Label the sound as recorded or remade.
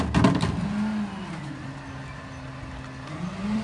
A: recorded